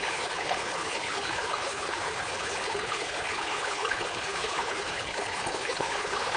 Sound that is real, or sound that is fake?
fake